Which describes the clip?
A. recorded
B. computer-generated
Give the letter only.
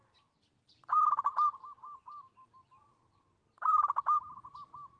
B